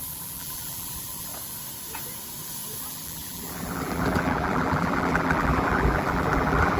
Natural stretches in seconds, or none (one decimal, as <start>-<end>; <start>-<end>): 1.3-2.8